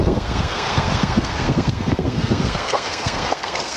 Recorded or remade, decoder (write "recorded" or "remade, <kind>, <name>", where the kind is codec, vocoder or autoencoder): remade, codec, SNAC